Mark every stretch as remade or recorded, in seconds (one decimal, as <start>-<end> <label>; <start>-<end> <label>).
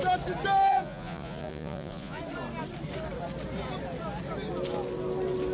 0.0-0.7 recorded; 0.7-2.2 remade; 2.2-5.5 recorded